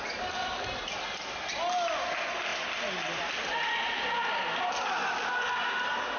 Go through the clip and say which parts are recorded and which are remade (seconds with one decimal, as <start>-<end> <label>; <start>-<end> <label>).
0.0-6.2 recorded